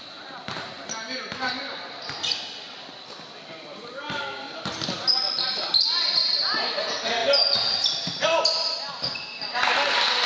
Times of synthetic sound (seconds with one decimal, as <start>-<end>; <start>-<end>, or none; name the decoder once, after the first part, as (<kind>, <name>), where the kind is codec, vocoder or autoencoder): none